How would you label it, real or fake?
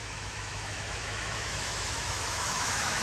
fake